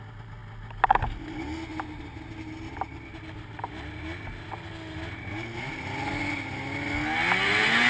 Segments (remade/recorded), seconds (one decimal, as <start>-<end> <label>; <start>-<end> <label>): 0.0-7.9 recorded